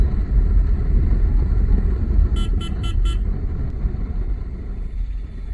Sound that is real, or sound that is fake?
real